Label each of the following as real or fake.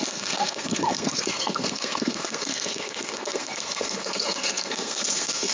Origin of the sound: fake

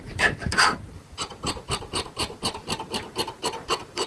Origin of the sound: fake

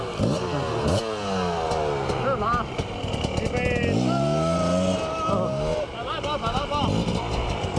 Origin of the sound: real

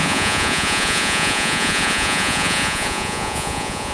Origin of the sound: fake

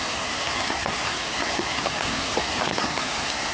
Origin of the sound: fake